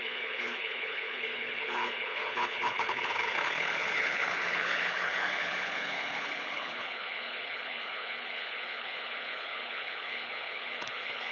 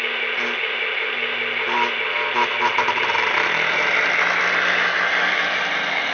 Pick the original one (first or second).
second